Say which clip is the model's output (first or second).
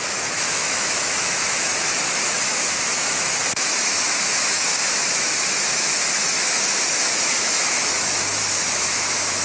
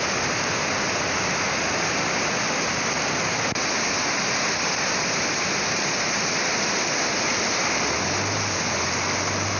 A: first